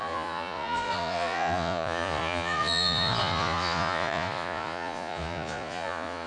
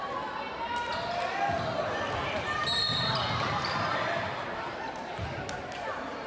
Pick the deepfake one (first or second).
first